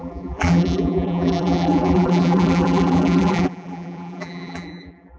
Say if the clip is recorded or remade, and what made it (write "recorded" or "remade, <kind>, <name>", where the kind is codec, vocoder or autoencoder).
remade, vocoder, BigVGAN v2